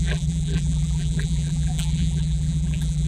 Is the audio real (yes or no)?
no